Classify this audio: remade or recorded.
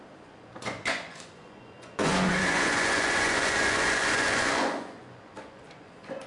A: remade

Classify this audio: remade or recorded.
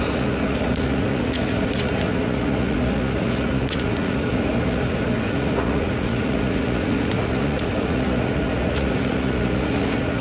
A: remade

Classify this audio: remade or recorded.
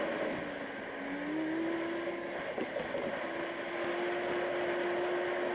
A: recorded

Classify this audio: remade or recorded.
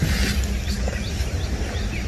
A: recorded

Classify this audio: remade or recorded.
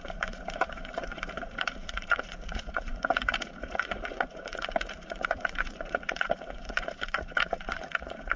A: remade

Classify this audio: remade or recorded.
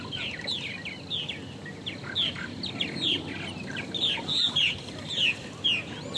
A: recorded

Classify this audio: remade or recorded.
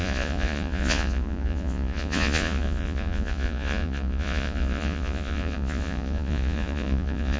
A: remade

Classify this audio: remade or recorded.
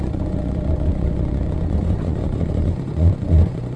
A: remade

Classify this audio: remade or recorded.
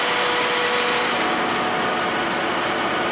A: recorded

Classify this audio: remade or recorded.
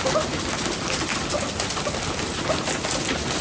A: recorded